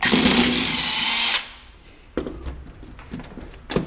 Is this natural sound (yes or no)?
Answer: yes